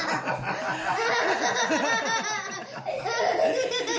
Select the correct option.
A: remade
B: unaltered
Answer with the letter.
B